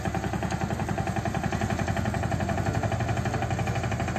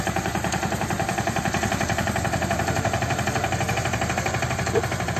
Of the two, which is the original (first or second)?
first